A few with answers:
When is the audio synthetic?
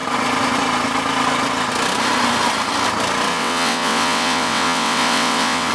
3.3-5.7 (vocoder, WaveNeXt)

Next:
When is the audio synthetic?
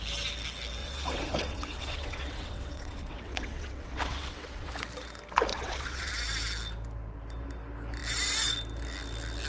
0.8-4.7 (vocoder, WaveNeXt); 5.5-6.1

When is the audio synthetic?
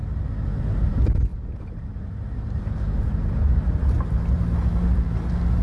1.3-4.2 (vocoder, BigVGAN v2)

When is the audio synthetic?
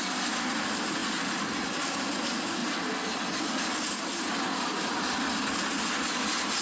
0.0-1.0 (vocoder, BigVGAN v2); 2.2-2.6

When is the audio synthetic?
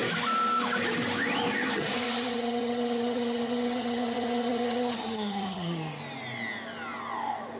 1.6-6.0 (vocoder, HiFi-GAN)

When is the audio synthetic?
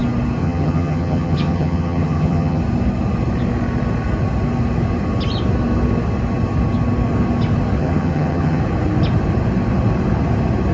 0.4-2.6 (vocoder, HiFi-GAN); 7.8-8.6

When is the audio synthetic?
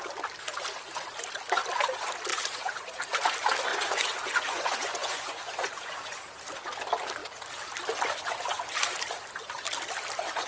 2.3-2.9 (vocoder, Vocos); 3.7-6.2